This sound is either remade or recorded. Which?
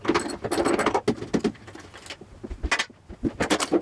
recorded